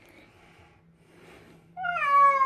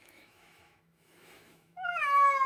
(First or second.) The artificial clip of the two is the second